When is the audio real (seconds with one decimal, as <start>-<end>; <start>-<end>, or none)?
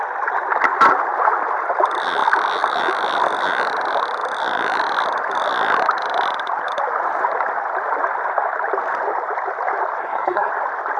0.0-10.0; 10.5-11.0